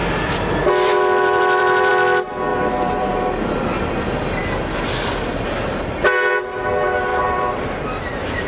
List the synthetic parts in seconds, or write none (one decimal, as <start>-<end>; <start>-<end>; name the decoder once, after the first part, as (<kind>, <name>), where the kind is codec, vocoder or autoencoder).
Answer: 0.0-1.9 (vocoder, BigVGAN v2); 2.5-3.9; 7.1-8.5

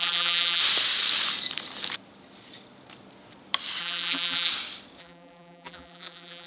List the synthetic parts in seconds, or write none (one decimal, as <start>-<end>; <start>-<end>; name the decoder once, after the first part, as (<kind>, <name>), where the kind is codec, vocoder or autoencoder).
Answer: 0.0-0.6 (vocoder, BigVGAN v2); 3.8-4.5; 5.0-6.5

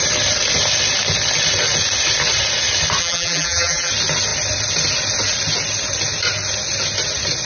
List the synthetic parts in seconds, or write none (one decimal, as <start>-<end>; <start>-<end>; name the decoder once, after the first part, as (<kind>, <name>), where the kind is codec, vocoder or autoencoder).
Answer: 3.0-3.9 (vocoder, BigVGAN v2)

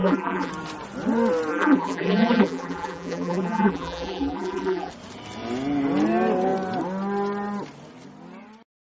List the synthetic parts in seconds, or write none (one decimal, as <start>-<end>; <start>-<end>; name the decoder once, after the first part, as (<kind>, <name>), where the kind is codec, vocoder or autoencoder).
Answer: 0.0-0.5 (vocoder, BigVGAN v2); 1.5-4.9

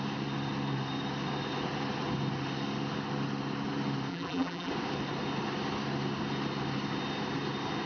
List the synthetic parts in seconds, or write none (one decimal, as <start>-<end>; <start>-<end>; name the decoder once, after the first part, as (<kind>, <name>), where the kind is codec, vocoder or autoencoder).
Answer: 4.1-4.7 (vocoder, BigVGAN v2)

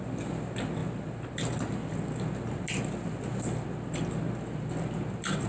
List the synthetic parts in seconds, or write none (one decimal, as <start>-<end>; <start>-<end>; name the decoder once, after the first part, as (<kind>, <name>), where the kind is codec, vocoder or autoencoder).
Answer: none

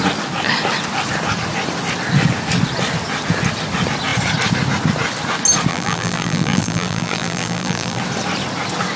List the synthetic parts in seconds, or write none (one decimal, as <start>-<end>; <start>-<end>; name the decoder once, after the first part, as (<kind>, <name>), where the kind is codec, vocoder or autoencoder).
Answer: 5.7-8.0 (vocoder, BigVGAN v2)

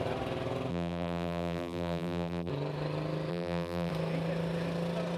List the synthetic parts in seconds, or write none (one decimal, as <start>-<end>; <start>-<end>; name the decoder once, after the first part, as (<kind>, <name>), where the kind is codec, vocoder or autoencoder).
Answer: 0.7-2.5 (vocoder, BigVGAN v2); 3.3-3.9